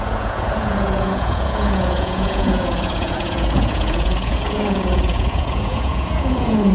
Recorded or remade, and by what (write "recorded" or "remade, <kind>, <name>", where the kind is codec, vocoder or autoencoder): remade, vocoder, Vocos